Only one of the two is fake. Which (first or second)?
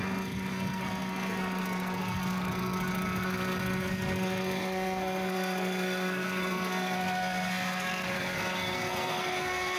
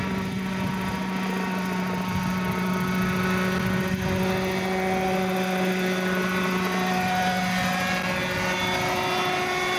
first